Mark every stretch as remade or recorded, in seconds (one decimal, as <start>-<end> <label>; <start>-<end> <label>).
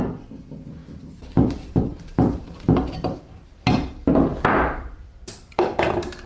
0.0-0.8 recorded; 0.8-3.4 remade; 3.4-4.3 recorded; 4.3-5.8 remade; 5.8-6.3 recorded